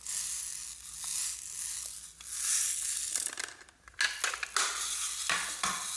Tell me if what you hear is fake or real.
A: real